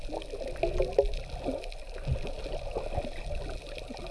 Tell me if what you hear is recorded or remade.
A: recorded